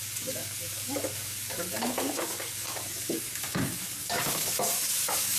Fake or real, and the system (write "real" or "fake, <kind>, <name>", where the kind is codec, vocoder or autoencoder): fake, codec, DAC